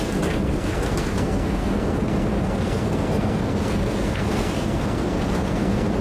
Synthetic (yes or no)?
yes